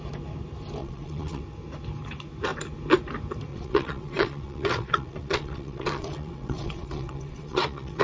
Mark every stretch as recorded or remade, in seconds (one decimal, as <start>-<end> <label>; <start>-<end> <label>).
0.0-0.8 recorded; 0.8-1.4 remade; 1.4-3.5 recorded; 3.5-8.0 remade